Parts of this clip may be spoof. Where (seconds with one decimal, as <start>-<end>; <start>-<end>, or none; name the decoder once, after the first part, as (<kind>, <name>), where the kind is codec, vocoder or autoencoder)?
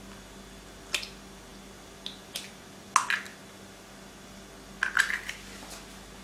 none